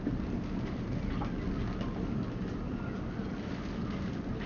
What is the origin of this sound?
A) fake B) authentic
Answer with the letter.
B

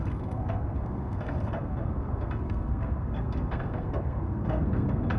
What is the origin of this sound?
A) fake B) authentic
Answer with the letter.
A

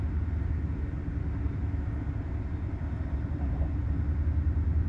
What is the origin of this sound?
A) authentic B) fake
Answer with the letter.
A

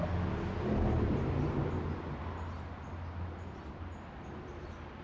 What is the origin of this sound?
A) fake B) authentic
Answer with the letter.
B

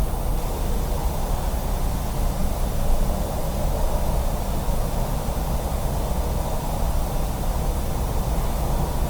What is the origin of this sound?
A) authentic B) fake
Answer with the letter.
A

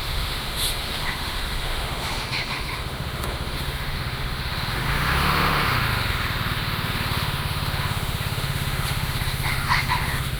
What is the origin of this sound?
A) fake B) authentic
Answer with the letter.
A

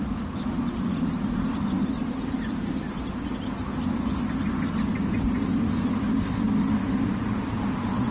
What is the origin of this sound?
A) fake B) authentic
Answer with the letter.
B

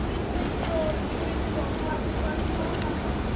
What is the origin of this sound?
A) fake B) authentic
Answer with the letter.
B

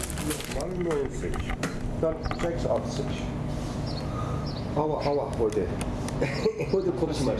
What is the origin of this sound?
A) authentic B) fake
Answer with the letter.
A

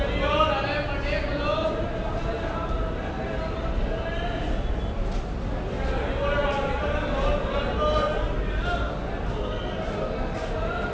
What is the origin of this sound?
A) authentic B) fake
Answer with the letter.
A